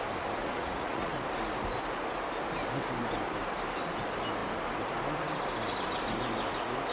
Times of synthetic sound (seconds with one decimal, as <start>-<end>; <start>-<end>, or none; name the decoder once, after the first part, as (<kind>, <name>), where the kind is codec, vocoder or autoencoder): 0.4-1.1 (vocoder, Vocos)